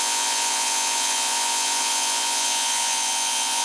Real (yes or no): no